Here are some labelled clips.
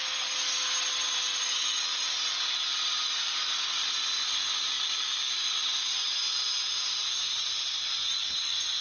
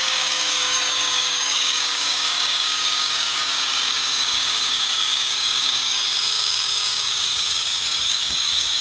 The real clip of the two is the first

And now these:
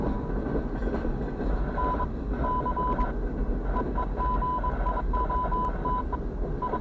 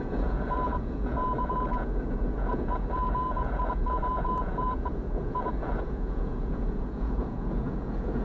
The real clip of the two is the first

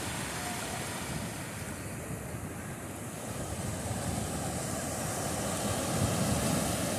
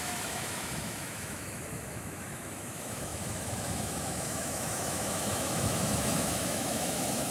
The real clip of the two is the first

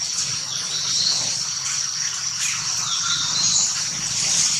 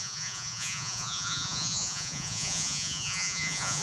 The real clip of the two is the first